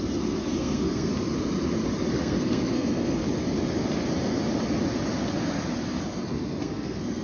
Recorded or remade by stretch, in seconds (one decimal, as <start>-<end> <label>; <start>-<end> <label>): 0.0-1.1 remade; 1.1-2.1 recorded; 2.1-3.2 remade; 3.2-6.0 recorded; 6.0-7.2 remade